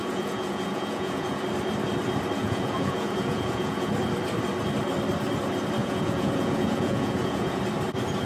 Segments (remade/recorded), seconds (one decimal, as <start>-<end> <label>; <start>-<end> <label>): 0.0-1.4 remade; 1.4-2.4 recorded; 2.4-3.9 remade; 3.9-5.8 recorded; 5.8-7.6 remade; 7.6-8.3 recorded